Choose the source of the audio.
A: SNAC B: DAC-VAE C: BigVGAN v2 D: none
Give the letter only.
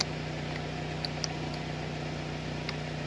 D